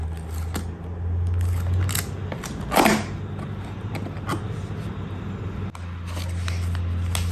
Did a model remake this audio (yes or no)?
no